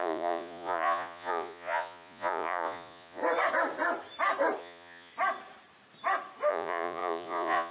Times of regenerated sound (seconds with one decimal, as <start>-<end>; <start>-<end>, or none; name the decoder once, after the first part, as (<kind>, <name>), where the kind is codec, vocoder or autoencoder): 0.0-3.2 (vocoder, Vocos); 4.6-5.1; 6.5-7.7

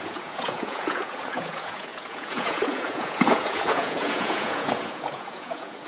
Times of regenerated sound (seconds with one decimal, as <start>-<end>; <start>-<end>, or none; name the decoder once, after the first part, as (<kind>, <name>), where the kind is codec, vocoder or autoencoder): 0.0-5.9 (vocoder, Vocos)